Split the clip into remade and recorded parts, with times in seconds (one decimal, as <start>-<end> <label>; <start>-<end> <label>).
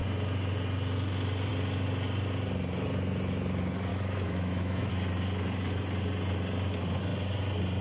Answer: 0.0-3.9 recorded; 3.9-4.9 remade; 4.9-7.8 recorded